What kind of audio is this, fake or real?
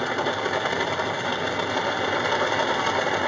real